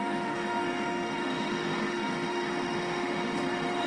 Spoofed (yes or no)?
yes